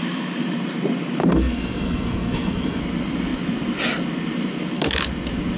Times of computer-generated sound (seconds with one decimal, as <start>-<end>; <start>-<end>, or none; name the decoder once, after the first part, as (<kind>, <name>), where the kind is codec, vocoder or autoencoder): 1.2-2.8 (codec, SNAC)